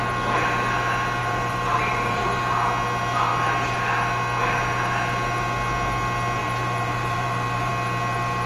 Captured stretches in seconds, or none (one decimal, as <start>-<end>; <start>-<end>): 0.0-1.2; 2.2-6.4; 7.7-8.5